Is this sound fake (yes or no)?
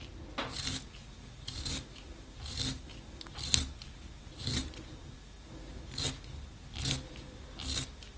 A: no